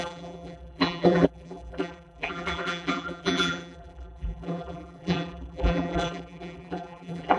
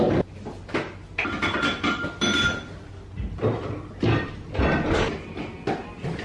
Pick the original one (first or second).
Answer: second